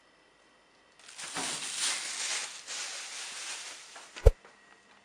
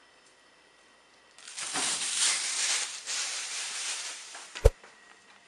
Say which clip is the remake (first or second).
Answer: second